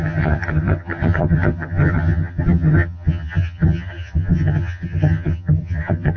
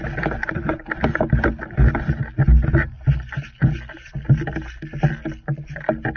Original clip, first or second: second